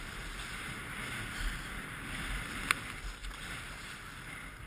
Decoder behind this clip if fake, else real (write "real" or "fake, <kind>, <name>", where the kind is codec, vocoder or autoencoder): real